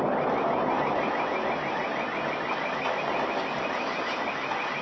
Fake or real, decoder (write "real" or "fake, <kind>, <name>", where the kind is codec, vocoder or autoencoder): real